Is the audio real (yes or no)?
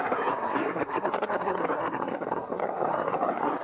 no